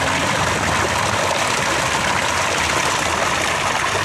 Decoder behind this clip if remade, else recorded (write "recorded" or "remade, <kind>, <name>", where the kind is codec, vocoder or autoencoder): recorded